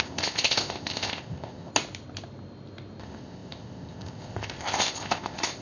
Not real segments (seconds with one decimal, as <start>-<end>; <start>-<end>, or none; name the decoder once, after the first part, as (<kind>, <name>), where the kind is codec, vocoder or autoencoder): 0.0-1.7 (codec, ZipCodec); 3.0-5.6